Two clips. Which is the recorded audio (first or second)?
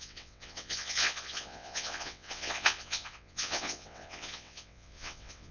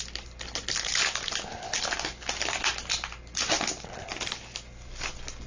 second